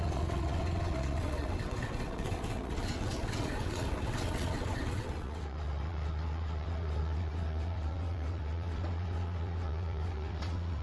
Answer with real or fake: fake